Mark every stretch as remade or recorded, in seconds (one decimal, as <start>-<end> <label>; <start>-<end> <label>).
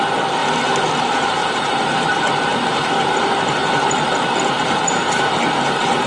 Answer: 0.0-0.4 remade; 0.4-0.9 recorded; 0.9-1.4 remade; 1.4-1.9 recorded; 1.9-6.1 remade